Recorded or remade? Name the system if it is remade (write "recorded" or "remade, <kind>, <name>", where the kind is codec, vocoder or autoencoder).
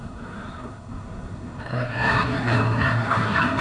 remade, codec, SNAC